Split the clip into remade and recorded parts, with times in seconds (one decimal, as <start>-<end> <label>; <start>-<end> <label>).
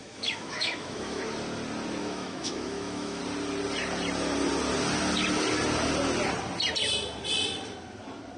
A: 0.0-1.2 remade; 1.2-2.0 recorded; 2.0-3.2 remade; 3.2-8.4 recorded